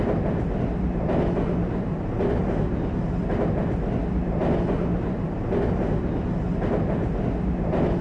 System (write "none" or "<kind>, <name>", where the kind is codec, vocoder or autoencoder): none